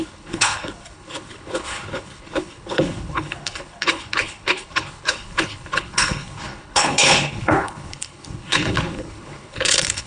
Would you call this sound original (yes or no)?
no